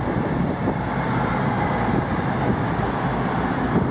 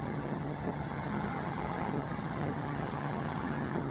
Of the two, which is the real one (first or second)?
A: first